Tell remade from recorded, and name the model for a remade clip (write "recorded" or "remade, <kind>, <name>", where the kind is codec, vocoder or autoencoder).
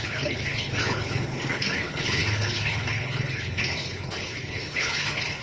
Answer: remade, codec, HILCodec